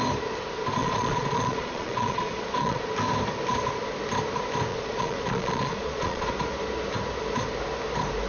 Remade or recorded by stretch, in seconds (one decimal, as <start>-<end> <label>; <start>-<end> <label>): 0.0-0.8 recorded; 0.8-2.8 remade; 2.8-4.7 recorded; 4.7-6.3 remade; 6.3-8.3 recorded